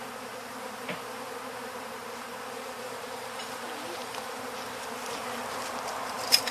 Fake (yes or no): yes